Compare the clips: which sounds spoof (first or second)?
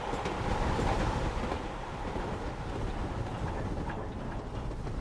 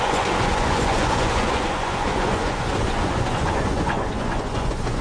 second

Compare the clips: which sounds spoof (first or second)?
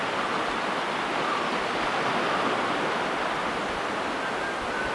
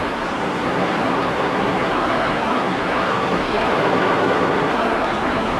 second